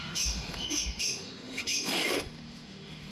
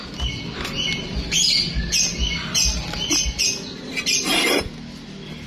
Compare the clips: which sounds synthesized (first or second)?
first